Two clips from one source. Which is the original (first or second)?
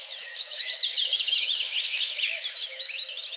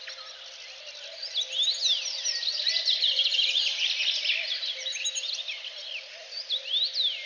second